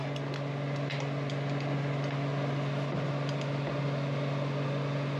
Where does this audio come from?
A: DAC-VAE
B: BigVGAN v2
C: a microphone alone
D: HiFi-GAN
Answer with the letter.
C